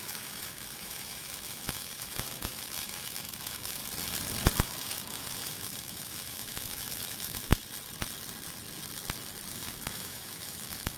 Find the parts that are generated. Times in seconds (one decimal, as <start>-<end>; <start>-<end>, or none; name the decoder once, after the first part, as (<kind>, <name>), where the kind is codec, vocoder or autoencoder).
0.0-3.8 (autoencoder, DAC-VAE); 4.6-7.5; 9.5-11.0